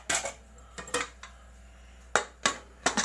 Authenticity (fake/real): real